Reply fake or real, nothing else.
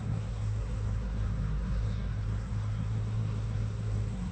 fake